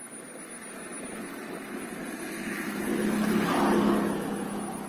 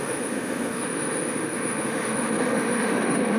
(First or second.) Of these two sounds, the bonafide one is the first